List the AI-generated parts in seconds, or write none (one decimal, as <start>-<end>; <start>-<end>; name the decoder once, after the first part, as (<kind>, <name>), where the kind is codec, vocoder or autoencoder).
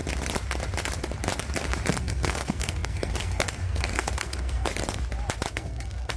2.0-4.7 (codec, SNAC); 5.5-6.2